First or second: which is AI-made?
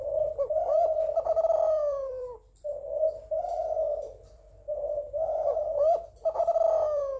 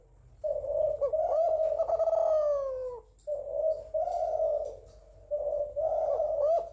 first